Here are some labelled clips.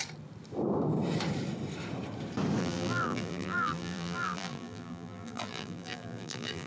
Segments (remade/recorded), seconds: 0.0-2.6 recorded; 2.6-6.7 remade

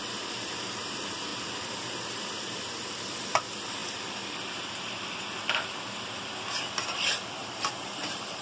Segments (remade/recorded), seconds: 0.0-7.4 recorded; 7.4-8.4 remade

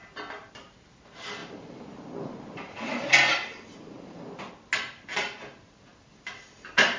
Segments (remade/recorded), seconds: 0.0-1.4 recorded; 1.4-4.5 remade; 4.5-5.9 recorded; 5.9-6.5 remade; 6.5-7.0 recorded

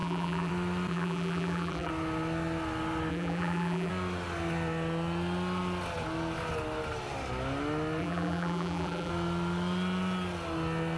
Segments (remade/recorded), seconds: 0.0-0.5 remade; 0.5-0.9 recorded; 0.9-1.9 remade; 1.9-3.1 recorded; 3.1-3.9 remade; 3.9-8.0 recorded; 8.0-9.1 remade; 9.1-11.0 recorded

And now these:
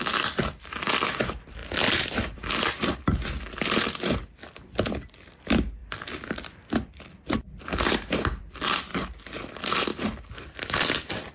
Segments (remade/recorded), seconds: 0.0-8.9 remade; 8.9-9.5 recorded; 9.5-9.9 remade; 9.9-10.5 recorded; 10.5-11.3 remade

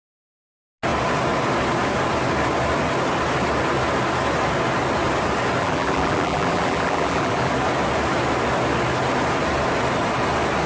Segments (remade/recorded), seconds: 0.0-5.6 recorded; 5.6-7.5 remade; 7.5-10.7 recorded

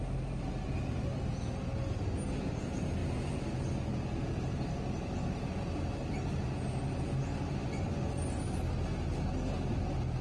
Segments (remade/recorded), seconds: 0.0-10.2 recorded

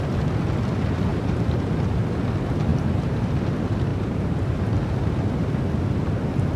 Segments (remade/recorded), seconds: 0.0-1.1 recorded; 1.1-1.7 remade; 1.7-2.7 recorded; 2.7-3.3 remade; 3.3-3.9 recorded; 3.9-4.6 remade; 4.6-6.6 recorded